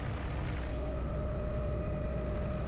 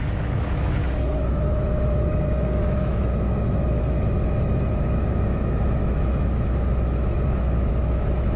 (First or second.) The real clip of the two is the first